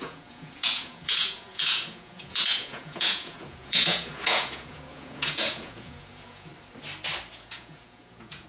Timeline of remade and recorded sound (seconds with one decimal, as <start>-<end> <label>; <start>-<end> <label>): 0.0-6.5 remade; 6.5-7.3 recorded; 7.3-8.5 remade